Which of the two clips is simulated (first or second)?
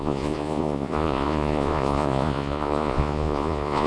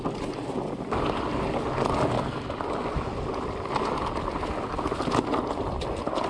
first